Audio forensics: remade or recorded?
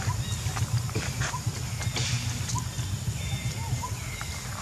recorded